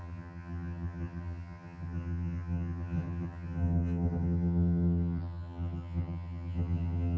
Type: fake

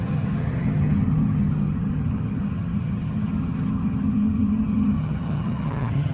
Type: fake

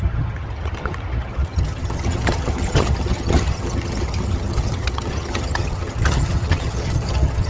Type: fake